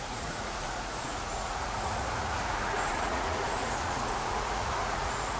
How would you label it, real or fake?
fake